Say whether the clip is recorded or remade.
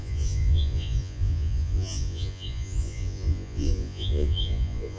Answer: remade